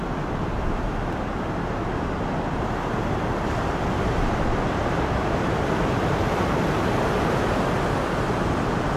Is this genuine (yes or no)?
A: yes